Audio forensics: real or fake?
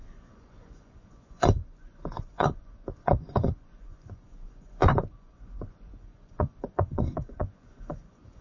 fake